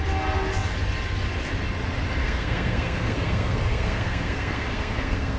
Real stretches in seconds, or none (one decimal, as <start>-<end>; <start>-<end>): 0.0-2.2